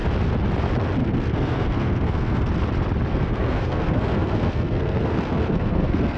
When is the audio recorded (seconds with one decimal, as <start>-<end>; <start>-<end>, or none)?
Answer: 0.0-1.0; 2.5-3.1